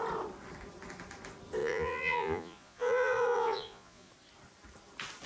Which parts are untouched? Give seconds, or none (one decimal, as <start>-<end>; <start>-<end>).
0.0-1.6; 4.1-5.3